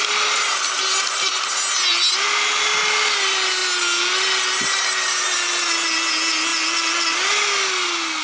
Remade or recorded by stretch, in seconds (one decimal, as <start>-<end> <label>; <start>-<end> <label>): 0.0-8.2 recorded